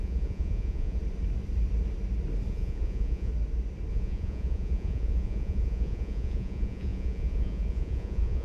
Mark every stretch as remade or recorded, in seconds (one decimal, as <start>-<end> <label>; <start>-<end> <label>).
0.0-1.0 remade; 1.0-2.5 recorded; 2.5-3.3 remade; 3.3-3.9 recorded; 3.9-8.4 remade